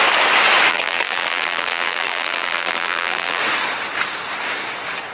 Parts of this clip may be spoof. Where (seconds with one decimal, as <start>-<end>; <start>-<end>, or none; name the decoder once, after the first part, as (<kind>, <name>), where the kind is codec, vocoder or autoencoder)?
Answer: 0.7-3.4 (vocoder, BigVGAN v2)